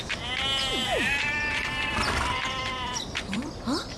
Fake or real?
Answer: fake